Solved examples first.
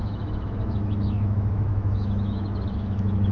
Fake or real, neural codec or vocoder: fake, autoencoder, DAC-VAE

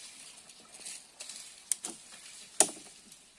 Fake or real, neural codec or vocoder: real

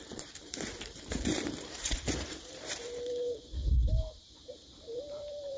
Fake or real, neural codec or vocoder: fake, vocoder, BigVGAN v2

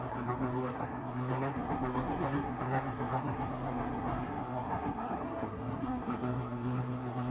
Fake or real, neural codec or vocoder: fake, codec, SNAC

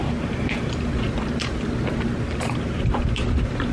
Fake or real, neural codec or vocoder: fake, vocoder, BigVGAN v2